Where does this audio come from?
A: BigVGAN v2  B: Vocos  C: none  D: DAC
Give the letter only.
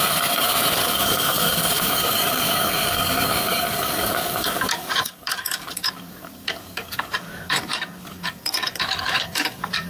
D